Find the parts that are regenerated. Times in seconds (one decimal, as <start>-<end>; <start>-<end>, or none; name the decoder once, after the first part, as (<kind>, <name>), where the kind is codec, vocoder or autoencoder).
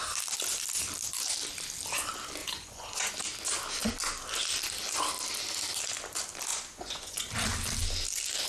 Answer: 2.4-3.1 (vocoder, Vocos); 6.5-7.3